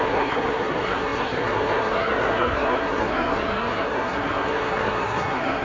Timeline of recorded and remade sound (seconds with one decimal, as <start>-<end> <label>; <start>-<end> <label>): 0.0-5.6 remade